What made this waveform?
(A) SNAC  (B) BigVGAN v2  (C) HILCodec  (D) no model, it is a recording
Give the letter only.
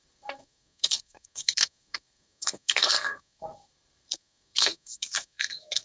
A